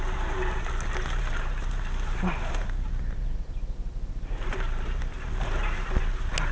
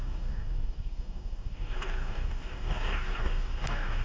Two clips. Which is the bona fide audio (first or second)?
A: first